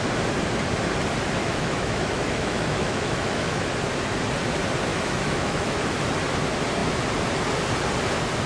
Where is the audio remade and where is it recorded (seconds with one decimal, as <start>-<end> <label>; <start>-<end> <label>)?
0.0-1.4 recorded; 1.4-3.7 remade; 3.7-4.9 recorded; 4.9-5.8 remade; 5.8-8.5 recorded